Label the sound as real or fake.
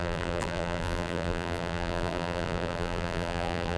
fake